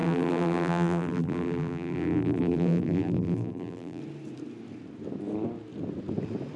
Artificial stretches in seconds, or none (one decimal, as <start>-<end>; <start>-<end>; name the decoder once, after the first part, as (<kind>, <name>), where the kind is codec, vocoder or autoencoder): 0.0-4.0 (vocoder, BigVGAN v2)